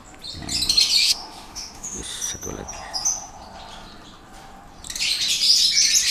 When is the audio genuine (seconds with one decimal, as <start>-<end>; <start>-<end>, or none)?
0.0-1.0; 2.0-6.1